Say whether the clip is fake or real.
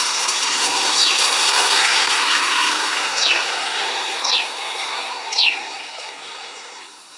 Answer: fake